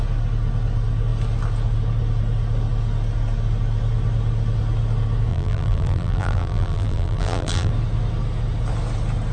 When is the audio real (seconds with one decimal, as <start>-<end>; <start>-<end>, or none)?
0.0-5.3; 7.7-9.3